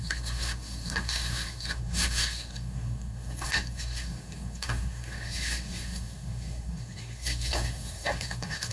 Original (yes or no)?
no